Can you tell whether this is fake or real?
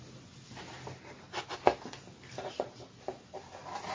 real